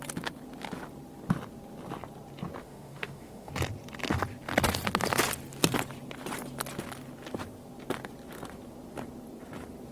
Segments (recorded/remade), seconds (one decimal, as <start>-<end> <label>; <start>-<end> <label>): 0.0-2.6 recorded; 2.6-3.5 remade; 3.5-9.9 recorded